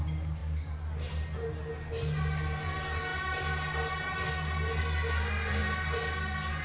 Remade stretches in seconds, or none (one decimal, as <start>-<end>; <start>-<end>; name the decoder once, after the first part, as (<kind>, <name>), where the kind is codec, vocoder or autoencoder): none